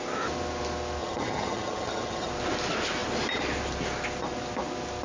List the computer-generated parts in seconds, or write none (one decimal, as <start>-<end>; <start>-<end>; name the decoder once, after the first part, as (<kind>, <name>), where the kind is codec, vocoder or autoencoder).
1.0-2.3 (vocoder, HiFi-GAN)

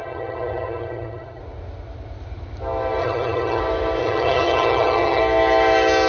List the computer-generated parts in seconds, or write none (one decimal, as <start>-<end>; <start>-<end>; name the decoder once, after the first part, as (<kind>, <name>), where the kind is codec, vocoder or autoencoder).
0.0-1.4 (vocoder, HiFi-GAN); 3.0-3.6; 4.0-5.2

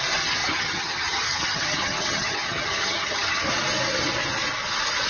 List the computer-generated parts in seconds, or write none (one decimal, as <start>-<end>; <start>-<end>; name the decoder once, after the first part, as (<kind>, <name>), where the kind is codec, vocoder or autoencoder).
0.4-3.5 (vocoder, HiFi-GAN)

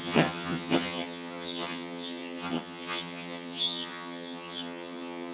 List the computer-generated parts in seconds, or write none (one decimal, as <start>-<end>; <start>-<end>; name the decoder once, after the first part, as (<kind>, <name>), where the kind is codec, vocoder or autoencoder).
0.0-5.3 (vocoder, HiFi-GAN)